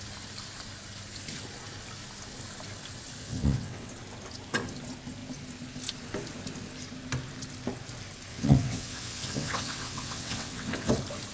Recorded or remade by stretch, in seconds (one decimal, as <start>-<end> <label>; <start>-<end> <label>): 0.0-3.2 recorded; 3.2-3.9 remade; 3.9-8.3 recorded; 8.3-10.9 remade; 10.9-11.3 recorded